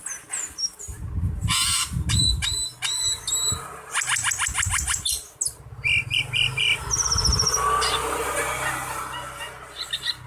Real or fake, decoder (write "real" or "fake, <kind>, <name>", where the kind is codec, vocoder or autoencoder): real